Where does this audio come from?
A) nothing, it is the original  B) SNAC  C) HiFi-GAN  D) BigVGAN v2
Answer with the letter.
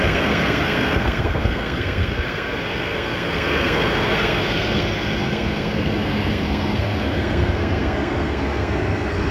B